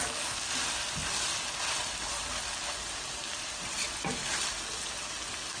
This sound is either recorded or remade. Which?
recorded